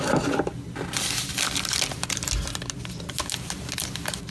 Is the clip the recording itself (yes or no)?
yes